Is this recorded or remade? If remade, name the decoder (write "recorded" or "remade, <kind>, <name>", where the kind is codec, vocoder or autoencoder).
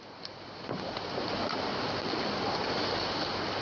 recorded